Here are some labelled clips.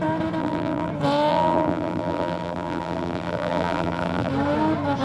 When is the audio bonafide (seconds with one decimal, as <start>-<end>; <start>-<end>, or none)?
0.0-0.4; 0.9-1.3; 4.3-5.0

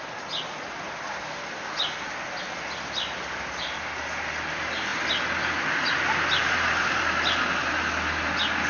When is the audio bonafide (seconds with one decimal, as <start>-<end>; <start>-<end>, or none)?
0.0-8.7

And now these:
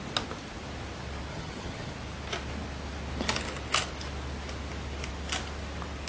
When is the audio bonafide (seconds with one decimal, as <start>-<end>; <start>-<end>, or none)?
0.0-1.3; 1.9-6.1